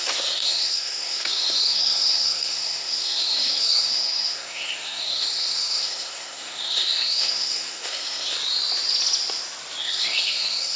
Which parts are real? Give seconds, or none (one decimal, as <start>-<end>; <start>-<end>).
8.4-9.8